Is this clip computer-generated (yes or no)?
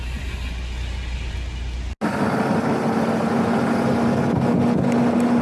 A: no